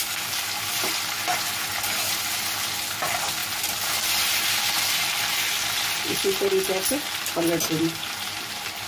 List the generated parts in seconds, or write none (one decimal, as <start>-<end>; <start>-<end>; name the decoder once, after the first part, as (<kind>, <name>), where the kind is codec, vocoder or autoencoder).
none